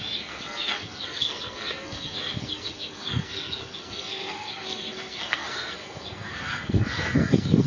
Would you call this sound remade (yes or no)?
yes